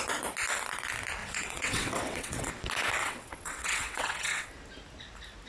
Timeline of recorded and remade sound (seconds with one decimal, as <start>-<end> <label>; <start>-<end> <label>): 0.0-1.2 recorded; 1.2-2.5 remade; 2.5-3.0 recorded; 3.0-4.5 remade; 4.5-5.5 recorded